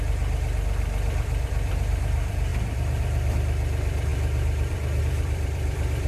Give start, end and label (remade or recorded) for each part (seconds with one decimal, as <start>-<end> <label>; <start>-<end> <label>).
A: 0.0-6.1 remade